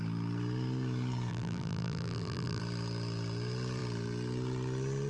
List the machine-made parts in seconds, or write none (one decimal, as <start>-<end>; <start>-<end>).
1.3-2.6